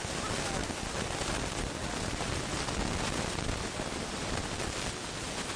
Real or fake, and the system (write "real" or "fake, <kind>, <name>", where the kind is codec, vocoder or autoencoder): real